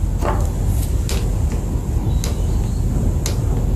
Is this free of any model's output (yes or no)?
yes